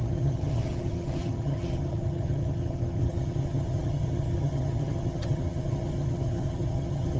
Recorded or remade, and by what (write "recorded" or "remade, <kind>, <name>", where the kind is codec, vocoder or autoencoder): remade, vocoder, HiFi-GAN